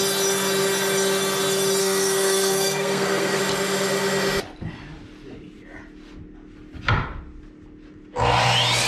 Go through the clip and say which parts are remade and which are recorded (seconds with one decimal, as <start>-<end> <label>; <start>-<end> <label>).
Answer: 0.0-1.8 recorded; 1.8-3.4 remade; 3.4-8.9 recorded